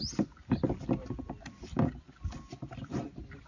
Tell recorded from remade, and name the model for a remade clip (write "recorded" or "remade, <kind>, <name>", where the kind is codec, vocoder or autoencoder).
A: recorded